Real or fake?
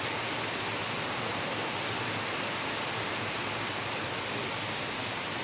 real